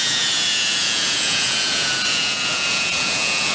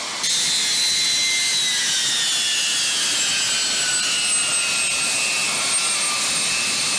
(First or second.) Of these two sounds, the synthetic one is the first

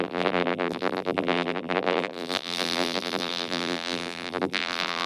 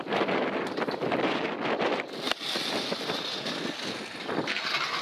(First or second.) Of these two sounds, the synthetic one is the first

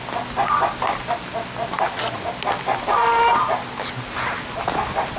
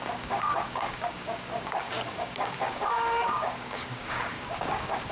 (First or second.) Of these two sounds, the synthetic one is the second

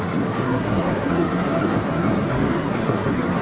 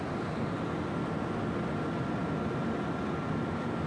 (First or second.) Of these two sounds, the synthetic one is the first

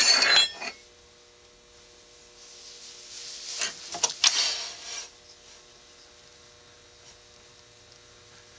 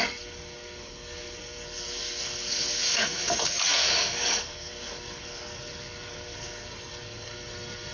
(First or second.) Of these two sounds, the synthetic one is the second